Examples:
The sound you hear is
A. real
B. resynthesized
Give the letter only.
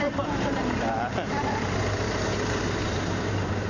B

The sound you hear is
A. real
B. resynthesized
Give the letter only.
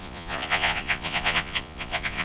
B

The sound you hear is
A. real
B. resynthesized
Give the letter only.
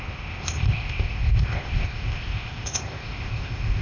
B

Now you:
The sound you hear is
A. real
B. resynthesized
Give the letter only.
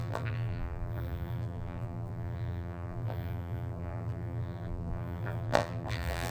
B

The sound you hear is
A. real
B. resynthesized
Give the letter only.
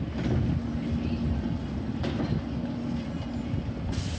A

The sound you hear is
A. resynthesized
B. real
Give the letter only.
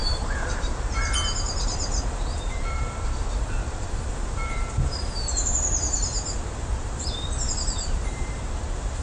A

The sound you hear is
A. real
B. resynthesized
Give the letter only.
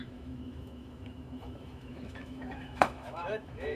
B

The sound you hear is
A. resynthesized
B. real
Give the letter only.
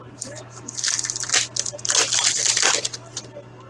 B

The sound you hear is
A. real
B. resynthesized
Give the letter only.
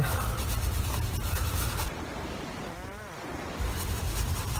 A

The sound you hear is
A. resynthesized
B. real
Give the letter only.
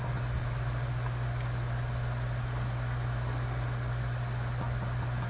B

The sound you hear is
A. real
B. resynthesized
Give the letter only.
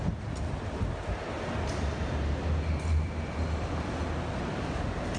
A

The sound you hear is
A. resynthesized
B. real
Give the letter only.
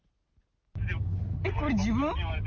B